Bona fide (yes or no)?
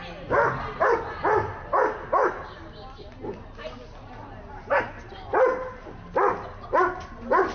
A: yes